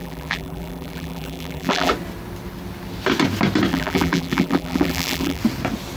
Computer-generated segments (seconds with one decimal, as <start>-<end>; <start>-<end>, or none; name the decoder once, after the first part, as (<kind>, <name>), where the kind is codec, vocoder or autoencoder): 0.0-1.9 (vocoder, BigVGAN v2); 3.7-5.4